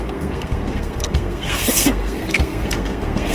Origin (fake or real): fake